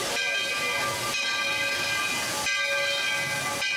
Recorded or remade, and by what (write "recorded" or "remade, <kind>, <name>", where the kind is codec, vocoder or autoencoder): recorded